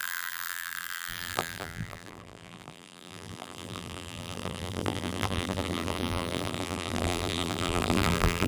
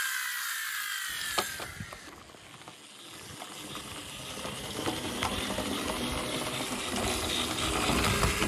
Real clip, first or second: second